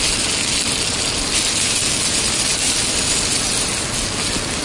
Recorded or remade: recorded